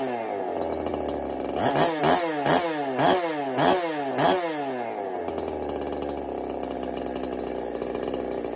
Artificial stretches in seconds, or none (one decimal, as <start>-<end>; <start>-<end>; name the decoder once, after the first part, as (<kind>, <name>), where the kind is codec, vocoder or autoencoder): none